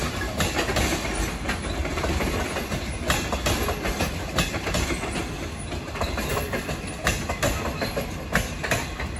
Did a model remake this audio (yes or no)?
no